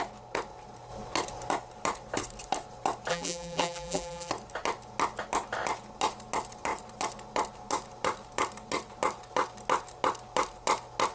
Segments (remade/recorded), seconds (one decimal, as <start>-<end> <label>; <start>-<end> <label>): 0.0-3.1 recorded; 3.1-4.3 remade; 4.3-11.1 recorded